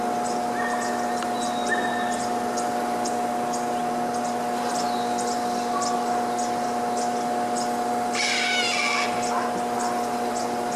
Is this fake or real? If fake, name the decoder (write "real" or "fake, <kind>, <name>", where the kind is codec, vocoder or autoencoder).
real